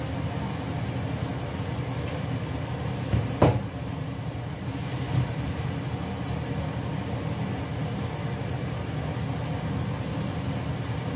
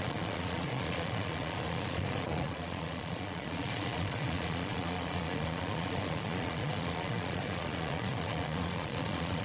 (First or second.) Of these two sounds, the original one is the first